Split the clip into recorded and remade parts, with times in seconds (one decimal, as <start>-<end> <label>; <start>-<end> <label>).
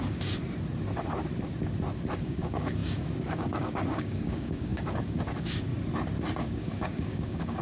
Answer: 0.0-0.4 remade; 0.4-2.2 recorded; 2.2-5.7 remade; 5.7-6.4 recorded; 6.4-7.6 remade